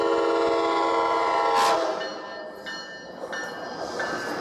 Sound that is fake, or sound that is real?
real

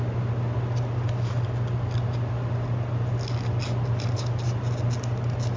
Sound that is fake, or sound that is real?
real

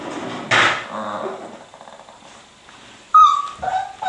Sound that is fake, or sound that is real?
real